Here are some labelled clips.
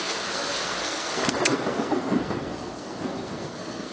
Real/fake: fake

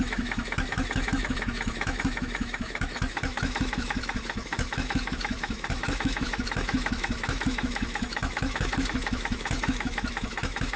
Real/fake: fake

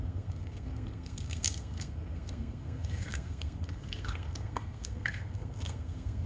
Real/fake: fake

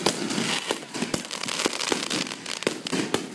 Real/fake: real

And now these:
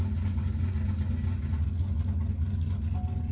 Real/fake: real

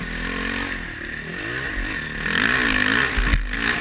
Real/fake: real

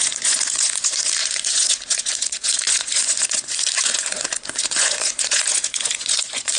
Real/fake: fake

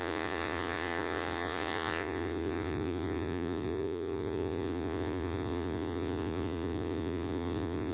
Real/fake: fake